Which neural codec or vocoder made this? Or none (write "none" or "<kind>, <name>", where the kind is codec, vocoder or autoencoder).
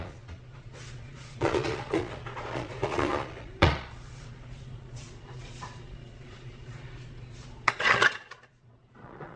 vocoder, Vocos